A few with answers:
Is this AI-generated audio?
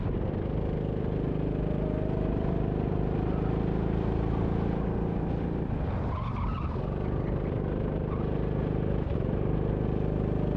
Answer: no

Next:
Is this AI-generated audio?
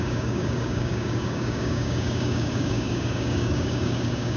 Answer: yes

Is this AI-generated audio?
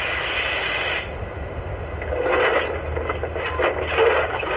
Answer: no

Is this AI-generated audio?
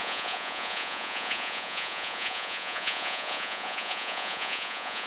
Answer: yes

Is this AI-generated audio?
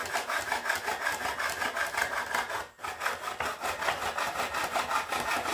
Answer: no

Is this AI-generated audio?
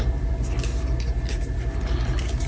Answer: no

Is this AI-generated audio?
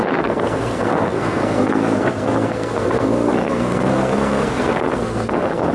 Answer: yes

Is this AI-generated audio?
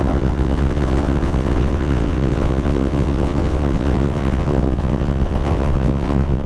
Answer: yes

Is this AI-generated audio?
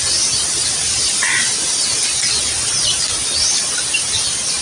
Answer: no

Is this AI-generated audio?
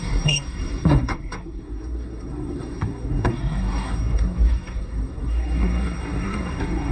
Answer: yes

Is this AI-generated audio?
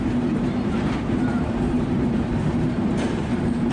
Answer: yes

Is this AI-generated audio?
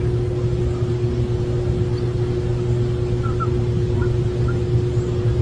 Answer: no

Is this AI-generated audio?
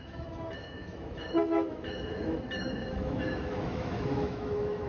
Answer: yes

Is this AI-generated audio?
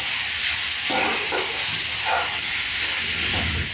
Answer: no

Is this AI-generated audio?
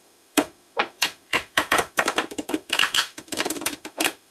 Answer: yes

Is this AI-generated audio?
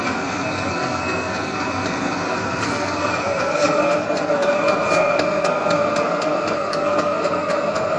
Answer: yes